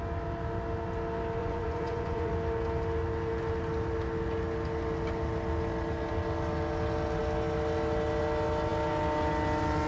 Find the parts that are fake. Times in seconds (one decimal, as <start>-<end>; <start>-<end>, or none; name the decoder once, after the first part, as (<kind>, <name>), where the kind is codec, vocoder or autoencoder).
1.4-2.3 (vocoder, Vocos)

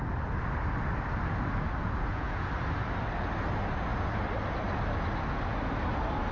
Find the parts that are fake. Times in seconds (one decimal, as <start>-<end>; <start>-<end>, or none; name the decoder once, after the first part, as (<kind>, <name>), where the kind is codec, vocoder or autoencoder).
1.8-2.5 (vocoder, Vocos)